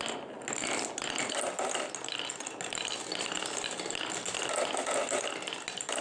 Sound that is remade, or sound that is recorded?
recorded